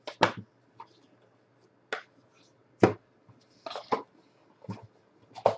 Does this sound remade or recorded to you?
recorded